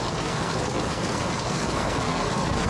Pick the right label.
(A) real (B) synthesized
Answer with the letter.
B